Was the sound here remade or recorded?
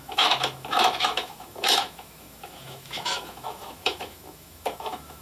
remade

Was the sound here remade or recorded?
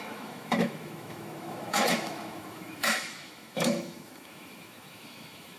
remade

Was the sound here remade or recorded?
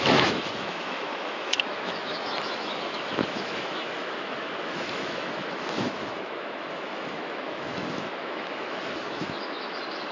remade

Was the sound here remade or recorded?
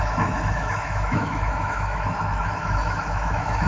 remade